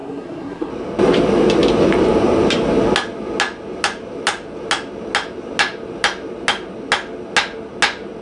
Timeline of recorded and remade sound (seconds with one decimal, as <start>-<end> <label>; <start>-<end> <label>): 0.0-0.7 remade; 0.7-8.2 recorded